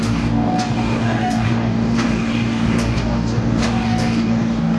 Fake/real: fake